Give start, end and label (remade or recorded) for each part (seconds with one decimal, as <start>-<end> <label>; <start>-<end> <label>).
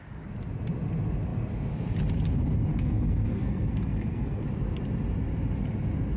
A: 0.0-2.7 recorded; 2.7-4.4 remade; 4.4-6.2 recorded